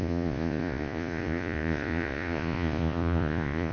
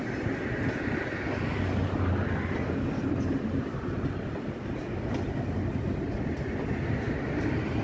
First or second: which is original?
second